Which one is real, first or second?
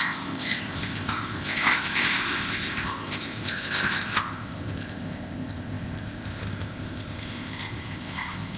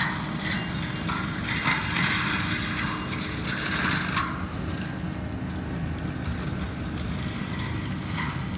second